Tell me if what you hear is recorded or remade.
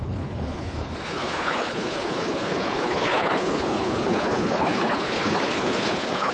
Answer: remade